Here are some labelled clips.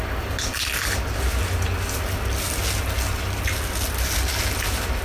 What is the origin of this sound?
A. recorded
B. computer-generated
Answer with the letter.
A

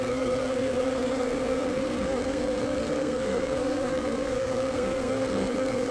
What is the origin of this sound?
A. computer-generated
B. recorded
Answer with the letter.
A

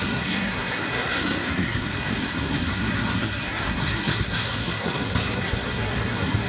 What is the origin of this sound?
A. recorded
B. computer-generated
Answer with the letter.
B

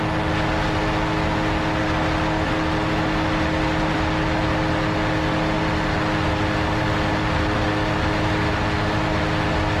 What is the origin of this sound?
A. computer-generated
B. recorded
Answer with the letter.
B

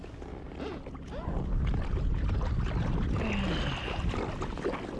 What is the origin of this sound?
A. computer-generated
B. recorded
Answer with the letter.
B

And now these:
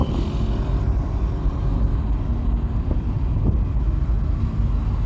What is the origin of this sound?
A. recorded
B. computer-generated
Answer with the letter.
A